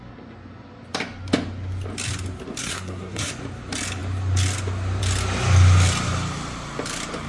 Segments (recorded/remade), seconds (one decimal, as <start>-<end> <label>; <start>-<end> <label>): 0.0-2.6 recorded; 2.6-3.3 remade; 3.3-7.3 recorded